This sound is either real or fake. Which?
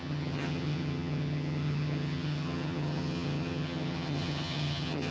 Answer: fake